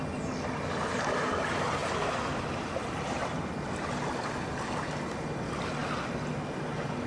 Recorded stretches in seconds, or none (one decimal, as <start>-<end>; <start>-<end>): 0.0-7.1